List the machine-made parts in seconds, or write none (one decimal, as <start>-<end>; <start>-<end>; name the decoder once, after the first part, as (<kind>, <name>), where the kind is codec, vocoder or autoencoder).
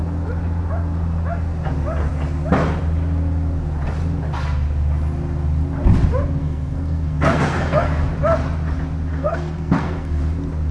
6.4-8.1 (codec, SNAC); 9.1-10.2